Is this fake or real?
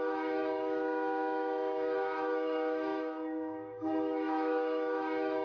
fake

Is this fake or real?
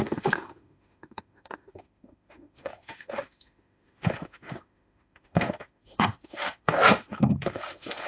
fake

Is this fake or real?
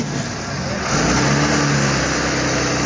real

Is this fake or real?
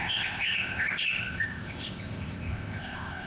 fake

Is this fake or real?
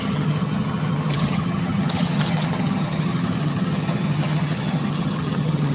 fake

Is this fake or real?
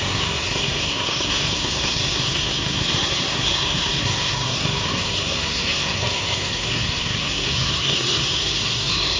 fake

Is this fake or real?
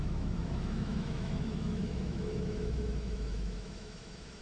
fake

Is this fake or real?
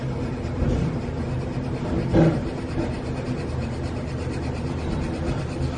real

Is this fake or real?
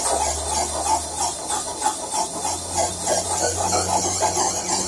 real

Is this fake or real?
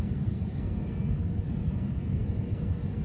fake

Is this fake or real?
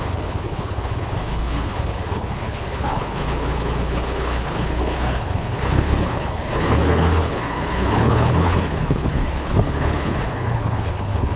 fake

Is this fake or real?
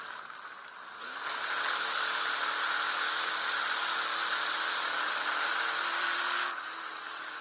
real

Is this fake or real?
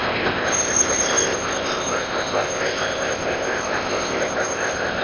fake